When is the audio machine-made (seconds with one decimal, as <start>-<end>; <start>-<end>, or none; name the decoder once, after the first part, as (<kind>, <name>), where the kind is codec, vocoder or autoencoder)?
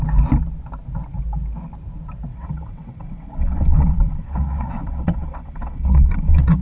2.3-6.6 (vocoder, WaveNeXt)